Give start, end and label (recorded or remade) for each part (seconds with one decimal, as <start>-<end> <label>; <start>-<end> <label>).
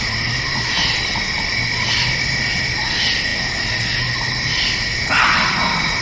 0.0-6.0 recorded